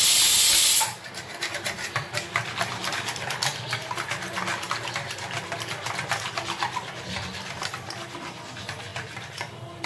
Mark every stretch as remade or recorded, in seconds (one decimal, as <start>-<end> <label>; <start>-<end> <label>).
0.0-9.9 recorded